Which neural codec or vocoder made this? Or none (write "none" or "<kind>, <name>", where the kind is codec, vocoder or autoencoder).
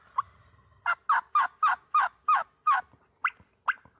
none